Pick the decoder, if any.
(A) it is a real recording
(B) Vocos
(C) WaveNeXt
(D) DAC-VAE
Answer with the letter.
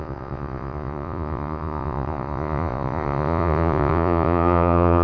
B